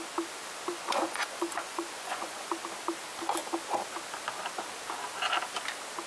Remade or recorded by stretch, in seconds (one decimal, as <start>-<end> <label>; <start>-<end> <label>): 0.0-0.7 recorded; 0.7-2.5 remade; 2.5-6.1 recorded